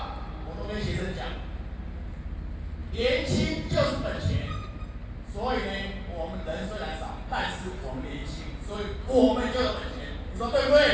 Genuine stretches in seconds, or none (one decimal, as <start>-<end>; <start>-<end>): 0.0-2.8; 4.5-5.0; 5.6-6.1; 6.8-8.2; 9.7-10.9